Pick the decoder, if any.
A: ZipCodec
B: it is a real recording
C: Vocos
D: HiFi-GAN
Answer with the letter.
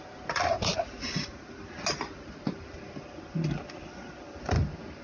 B